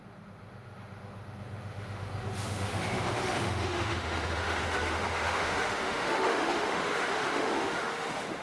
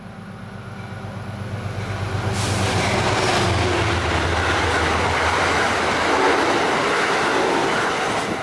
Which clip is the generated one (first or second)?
first